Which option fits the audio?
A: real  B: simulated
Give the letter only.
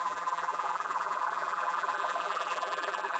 B